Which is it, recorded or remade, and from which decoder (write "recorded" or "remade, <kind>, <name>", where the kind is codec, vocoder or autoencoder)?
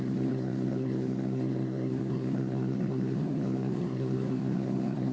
remade, codec, SNAC